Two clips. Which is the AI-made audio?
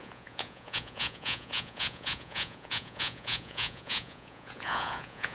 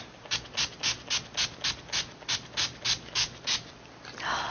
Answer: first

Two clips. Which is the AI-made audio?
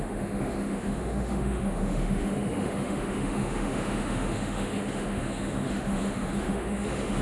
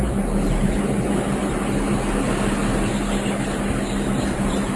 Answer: first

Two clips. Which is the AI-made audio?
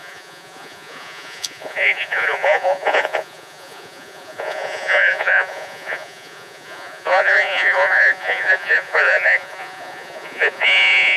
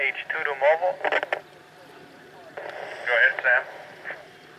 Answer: first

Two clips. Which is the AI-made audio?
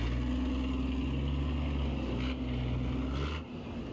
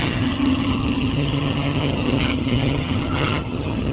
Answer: second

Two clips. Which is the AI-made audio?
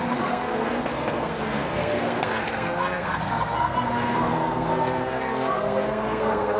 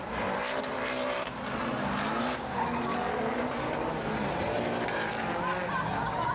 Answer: first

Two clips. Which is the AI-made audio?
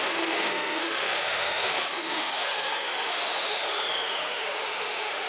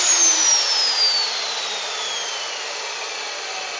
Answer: first